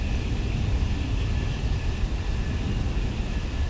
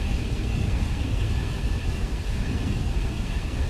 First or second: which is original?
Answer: first